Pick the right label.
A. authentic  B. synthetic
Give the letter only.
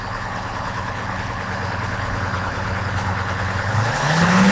B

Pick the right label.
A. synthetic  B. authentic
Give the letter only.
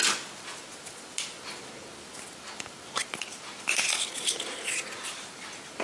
B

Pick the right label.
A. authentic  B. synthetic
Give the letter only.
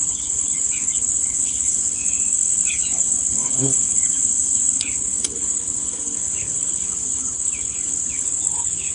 B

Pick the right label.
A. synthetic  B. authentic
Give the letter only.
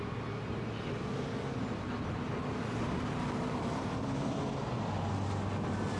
B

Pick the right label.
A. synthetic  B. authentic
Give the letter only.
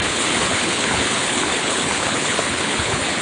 A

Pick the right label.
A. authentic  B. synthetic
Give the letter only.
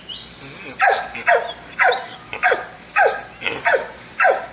A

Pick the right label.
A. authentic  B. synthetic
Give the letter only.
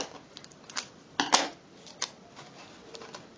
A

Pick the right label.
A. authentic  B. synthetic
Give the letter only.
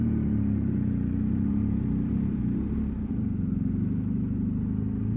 A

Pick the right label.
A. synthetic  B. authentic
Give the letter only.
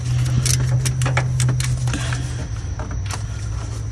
B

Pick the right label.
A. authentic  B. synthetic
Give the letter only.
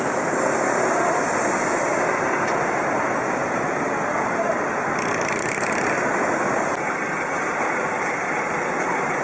A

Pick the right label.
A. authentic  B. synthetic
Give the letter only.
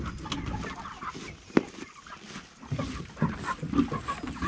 A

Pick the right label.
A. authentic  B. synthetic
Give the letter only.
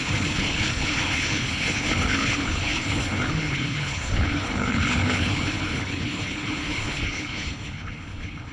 B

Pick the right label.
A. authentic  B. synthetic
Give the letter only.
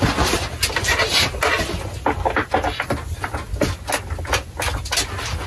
A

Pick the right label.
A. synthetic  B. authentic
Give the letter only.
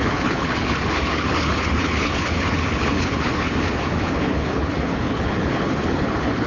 A